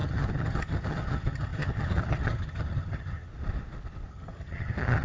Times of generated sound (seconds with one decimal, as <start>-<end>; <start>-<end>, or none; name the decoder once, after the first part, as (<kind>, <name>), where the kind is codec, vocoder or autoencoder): 0.0-3.3 (vocoder, HiFi-GAN); 4.1-5.0